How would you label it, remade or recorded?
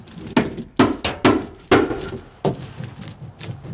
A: recorded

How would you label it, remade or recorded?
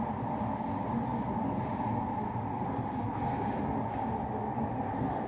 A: recorded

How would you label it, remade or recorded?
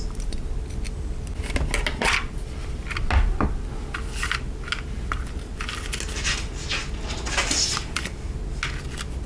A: recorded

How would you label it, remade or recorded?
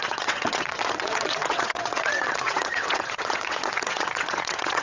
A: remade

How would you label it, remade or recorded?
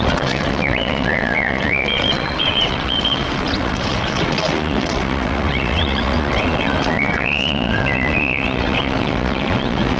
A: remade